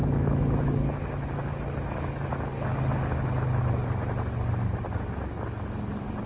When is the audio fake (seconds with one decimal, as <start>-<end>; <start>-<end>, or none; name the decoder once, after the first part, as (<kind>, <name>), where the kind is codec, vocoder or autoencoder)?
0.0-0.6 (autoencoder, DAC-VAE)